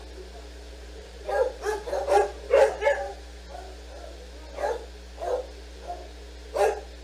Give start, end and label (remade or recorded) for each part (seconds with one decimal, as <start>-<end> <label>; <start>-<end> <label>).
0.0-0.7 recorded; 0.7-2.7 remade; 2.7-7.0 recorded